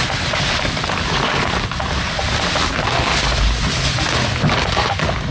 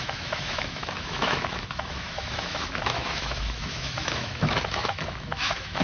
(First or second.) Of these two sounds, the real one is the first